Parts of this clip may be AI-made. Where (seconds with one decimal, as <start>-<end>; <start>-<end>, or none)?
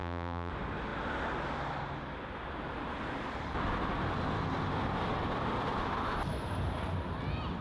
0.0-0.5